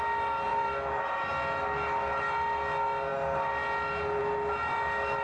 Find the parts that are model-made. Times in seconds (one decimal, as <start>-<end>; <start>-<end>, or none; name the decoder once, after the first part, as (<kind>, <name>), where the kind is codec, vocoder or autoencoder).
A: 0.5-1.3 (vocoder, BigVGAN v2)